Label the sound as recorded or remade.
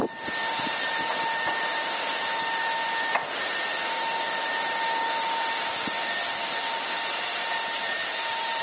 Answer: recorded